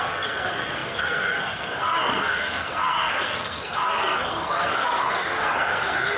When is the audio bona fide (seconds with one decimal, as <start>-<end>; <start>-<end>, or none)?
none